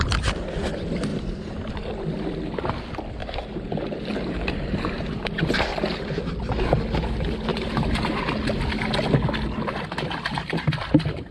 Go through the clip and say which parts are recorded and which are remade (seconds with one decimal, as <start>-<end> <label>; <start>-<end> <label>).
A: 0.0-1.1 recorded; 1.1-1.7 remade; 1.7-3.2 recorded; 3.2-5.5 remade; 5.5-7.5 recorded; 7.5-8.2 remade; 8.2-11.3 recorded